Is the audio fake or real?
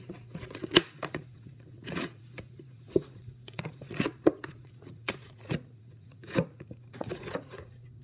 fake